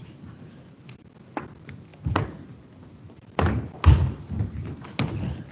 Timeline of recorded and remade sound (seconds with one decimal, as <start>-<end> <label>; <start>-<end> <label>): 0.0-5.5 recorded